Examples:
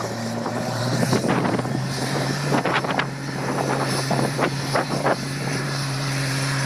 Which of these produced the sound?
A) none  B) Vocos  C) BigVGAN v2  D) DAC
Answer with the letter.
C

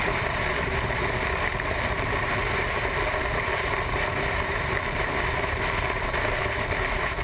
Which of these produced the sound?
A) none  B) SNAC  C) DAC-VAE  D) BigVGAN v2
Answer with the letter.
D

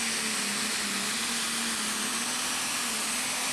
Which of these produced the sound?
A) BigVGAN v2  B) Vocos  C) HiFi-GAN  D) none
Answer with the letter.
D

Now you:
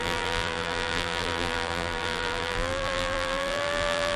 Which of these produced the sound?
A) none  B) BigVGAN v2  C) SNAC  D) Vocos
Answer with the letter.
B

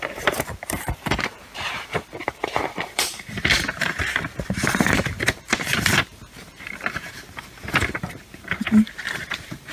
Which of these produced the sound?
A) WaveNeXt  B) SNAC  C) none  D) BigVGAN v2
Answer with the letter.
D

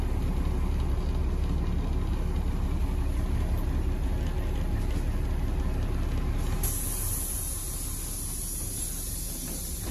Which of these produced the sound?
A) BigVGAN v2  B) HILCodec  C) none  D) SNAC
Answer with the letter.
C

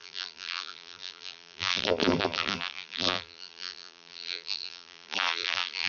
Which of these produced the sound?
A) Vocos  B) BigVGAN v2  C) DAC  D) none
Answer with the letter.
B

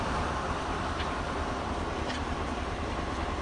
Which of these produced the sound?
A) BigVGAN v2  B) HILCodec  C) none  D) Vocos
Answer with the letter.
A